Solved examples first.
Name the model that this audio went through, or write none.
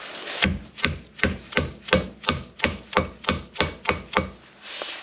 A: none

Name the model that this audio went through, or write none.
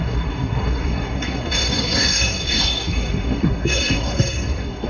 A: codec, SNAC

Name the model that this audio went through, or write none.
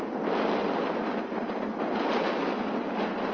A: none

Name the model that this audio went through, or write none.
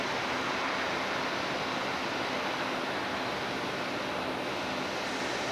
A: none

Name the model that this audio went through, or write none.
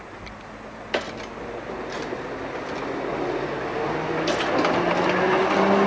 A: none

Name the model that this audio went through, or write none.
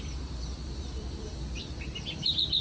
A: vocoder, BigVGAN v2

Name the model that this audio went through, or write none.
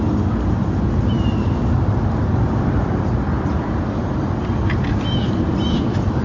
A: none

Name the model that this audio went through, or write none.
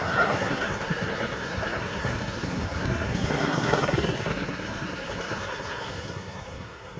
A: codec, SNAC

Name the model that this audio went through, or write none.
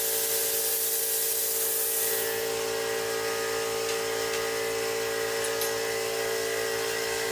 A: none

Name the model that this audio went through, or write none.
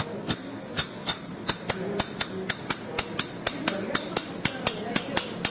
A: none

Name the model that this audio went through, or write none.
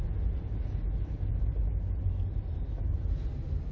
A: none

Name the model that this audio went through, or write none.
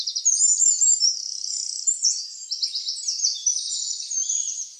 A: none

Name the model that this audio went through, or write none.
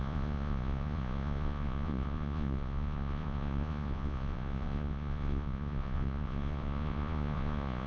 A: vocoder, Vocos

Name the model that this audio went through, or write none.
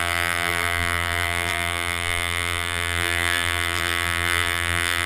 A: vocoder, BigVGAN v2